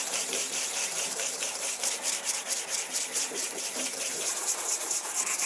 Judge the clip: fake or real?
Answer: fake